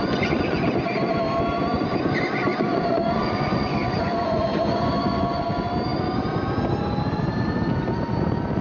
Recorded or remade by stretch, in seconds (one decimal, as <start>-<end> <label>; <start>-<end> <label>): 0.0-0.6 remade; 0.6-2.5 recorded; 2.5-5.4 remade; 5.4-8.6 recorded